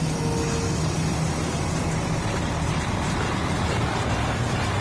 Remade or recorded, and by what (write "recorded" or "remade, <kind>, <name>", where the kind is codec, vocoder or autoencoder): recorded